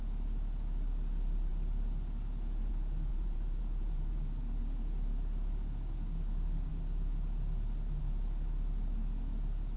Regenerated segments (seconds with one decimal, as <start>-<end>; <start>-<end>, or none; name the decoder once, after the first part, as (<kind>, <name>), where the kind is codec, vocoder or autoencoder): 3.1-4.6 (vocoder, BigVGAN v2)